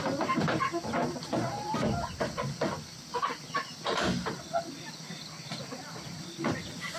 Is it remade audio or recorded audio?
recorded